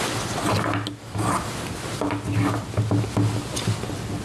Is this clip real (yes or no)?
yes